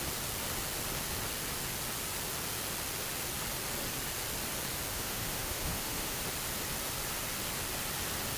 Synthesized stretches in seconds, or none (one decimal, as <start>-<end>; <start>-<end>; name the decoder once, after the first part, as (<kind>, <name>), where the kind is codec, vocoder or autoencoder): 4.9-6.2 (autoencoder, DAC-VAE)